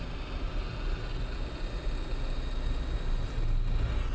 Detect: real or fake real